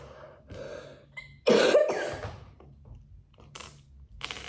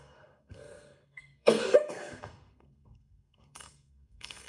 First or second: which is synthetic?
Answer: second